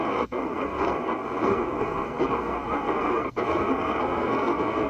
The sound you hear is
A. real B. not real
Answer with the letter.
B